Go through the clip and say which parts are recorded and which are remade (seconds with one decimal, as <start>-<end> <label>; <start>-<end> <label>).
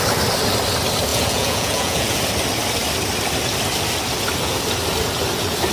0.0-1.1 recorded; 1.1-2.2 remade; 2.2-5.7 recorded